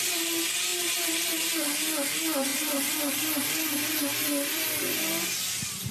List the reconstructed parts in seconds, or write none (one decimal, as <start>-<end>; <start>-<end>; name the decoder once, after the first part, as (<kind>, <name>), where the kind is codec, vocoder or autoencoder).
2.5-3.1 (vocoder, BigVGAN v2)